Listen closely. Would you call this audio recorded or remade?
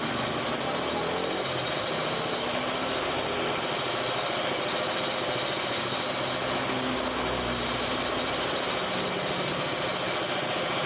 recorded